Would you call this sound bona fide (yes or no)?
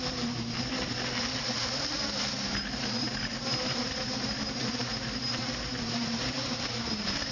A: no